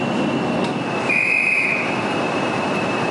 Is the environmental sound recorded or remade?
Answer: recorded